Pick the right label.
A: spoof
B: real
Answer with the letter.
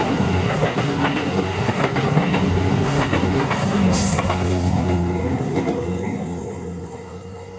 A